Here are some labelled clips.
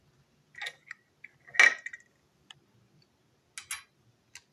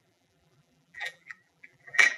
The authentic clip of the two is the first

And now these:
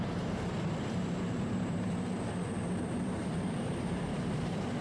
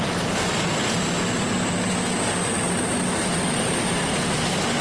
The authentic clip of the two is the second